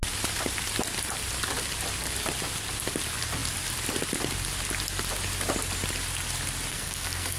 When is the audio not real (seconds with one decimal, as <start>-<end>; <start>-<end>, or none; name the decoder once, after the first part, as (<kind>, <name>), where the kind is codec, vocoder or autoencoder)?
6.7-7.4 (codec, SNAC)